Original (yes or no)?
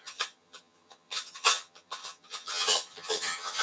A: no